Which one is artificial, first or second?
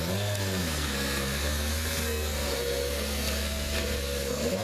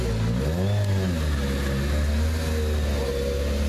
first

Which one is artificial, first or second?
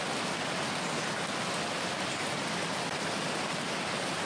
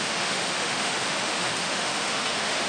second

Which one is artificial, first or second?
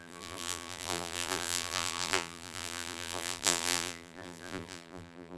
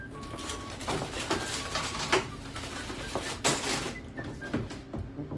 first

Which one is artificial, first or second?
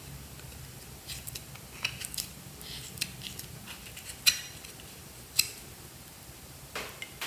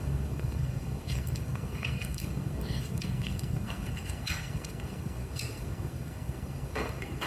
second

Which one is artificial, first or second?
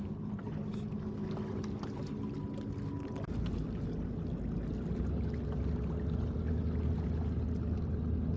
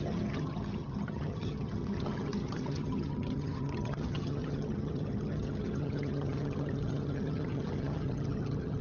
second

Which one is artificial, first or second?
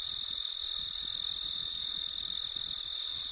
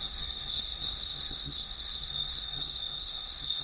second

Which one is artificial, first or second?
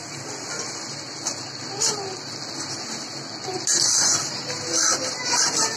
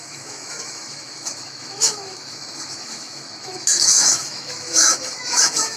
second